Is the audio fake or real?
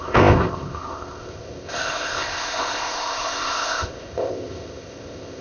fake